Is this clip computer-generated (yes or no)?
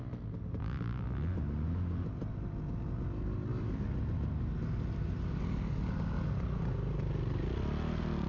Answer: no